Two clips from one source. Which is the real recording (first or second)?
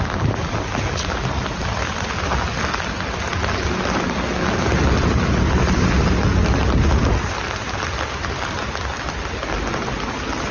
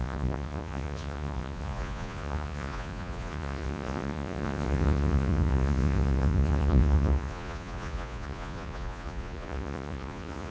first